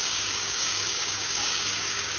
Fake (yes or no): yes